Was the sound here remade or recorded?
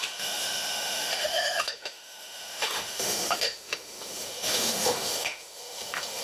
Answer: remade